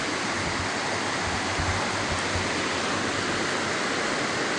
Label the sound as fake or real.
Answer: real